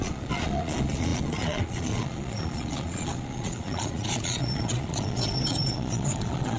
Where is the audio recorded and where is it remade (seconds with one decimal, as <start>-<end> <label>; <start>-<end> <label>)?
0.0-6.6 remade